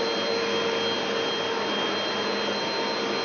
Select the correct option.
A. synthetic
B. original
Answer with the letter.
B